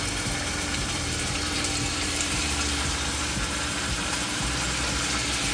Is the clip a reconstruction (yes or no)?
yes